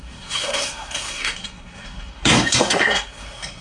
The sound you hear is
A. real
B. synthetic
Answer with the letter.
B